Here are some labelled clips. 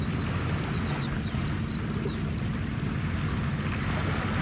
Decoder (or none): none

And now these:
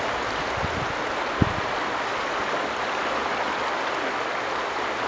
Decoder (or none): none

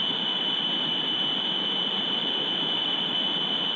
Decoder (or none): none